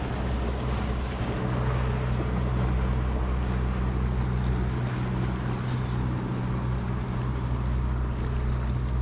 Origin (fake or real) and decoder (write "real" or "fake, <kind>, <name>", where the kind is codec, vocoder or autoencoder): real